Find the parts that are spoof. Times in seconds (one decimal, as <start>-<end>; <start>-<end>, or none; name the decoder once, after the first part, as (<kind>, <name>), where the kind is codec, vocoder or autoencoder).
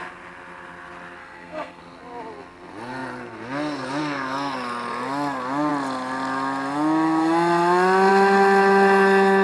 1.2-1.8 (codec, SNAC)